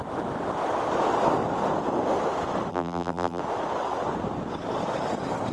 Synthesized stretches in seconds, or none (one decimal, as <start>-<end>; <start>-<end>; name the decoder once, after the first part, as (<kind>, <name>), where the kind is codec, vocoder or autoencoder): 2.7-3.4 (vocoder, BigVGAN v2)